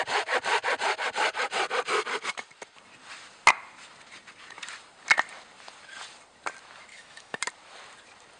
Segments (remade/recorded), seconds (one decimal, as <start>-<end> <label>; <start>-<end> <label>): 0.0-6.9 recorded; 6.9-7.4 remade; 7.4-8.4 recorded